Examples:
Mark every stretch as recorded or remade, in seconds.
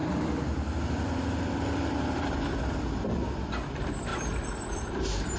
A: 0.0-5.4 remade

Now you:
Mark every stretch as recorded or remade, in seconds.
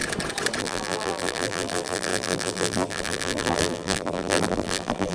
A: 0.0-0.6 recorded; 0.6-5.1 remade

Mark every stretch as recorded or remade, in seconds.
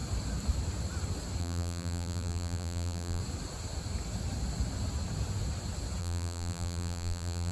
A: 0.0-1.4 recorded; 1.4-3.2 remade; 3.2-6.0 recorded; 6.0-7.5 remade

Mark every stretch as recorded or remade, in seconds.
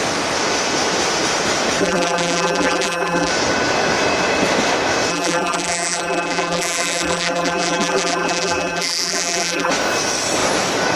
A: 0.0-1.8 recorded; 1.8-3.3 remade; 3.3-5.1 recorded; 5.1-9.7 remade; 9.7-11.0 recorded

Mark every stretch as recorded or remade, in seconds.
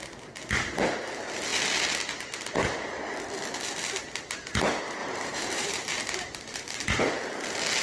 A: 0.0-5.0 recorded; 5.0-7.0 remade; 7.0-7.8 recorded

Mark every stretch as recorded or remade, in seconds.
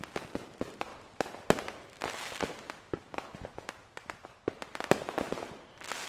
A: 0.0-3.8 remade; 3.8-6.1 recorded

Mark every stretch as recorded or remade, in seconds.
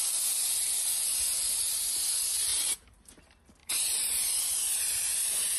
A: 0.0-2.5 recorded; 2.5-3.1 remade; 3.1-3.6 recorded; 3.6-4.4 remade; 4.4-5.1 recorded; 5.1-5.6 remade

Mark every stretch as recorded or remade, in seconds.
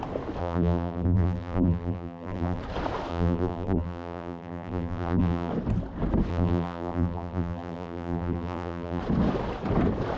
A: 0.0-0.4 recorded; 0.4-2.6 remade; 2.6-3.1 recorded; 3.1-5.5 remade; 5.5-6.3 recorded; 6.3-9.0 remade; 9.0-10.2 recorded